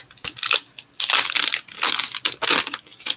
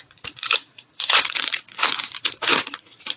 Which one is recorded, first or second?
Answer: first